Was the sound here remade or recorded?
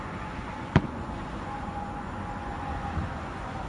remade